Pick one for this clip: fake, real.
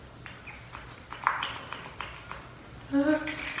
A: real